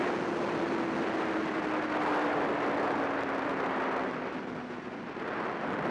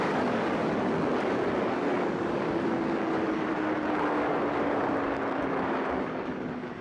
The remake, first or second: second